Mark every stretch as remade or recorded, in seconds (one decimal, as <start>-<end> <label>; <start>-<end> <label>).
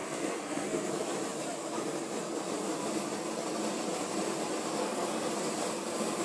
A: 0.0-0.9 remade; 0.9-4.8 recorded; 4.8-5.3 remade; 5.3-6.2 recorded